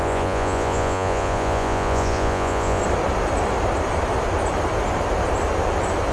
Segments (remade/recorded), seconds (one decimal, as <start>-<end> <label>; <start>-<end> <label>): 0.0-2.8 remade; 2.8-6.1 recorded